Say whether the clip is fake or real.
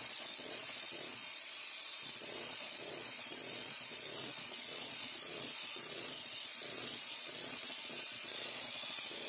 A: fake